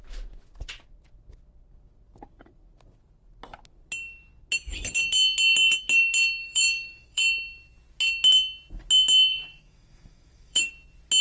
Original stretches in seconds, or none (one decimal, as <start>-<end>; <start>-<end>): 0.0-6.4; 7.2-9.3; 10.7-11.2